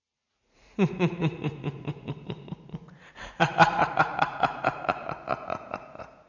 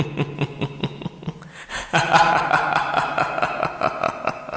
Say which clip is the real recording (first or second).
second